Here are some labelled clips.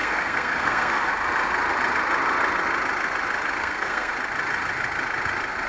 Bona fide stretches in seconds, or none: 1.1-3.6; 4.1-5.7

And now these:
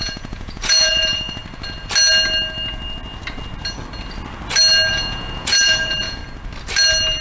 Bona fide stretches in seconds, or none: 1.4-4.9; 6.2-7.2

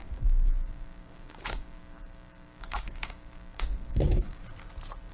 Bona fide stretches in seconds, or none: 4.4-5.1

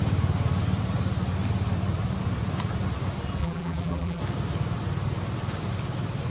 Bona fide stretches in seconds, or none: 0.0-3.4; 4.2-6.3

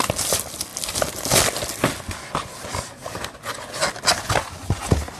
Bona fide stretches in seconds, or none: 0.0-5.2